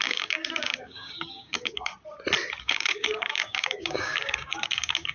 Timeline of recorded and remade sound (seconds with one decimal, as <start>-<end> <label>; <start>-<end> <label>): 0.0-1.9 remade; 1.9-2.6 recorded; 2.6-5.1 remade